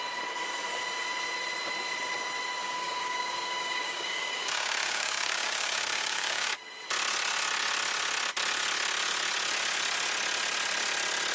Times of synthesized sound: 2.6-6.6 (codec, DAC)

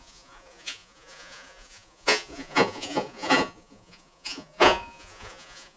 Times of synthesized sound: 0.0-5.8 (vocoder, Vocos)